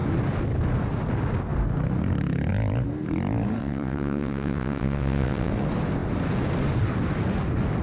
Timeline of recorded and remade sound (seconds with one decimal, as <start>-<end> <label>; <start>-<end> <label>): 0.0-3.6 recorded; 3.6-5.5 remade; 5.5-7.8 recorded